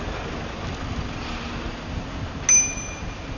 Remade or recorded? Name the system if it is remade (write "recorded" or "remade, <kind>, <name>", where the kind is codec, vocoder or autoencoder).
recorded